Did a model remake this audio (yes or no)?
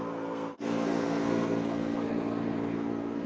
yes